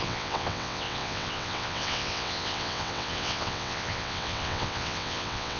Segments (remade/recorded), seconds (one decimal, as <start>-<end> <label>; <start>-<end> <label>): 0.0-5.6 remade